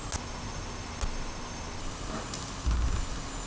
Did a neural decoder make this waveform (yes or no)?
no